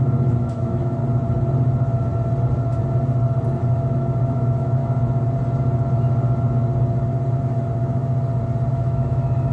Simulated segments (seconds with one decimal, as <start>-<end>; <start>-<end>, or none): 0.0-1.0; 3.6-4.8; 7.4-8.0; 8.7-9.5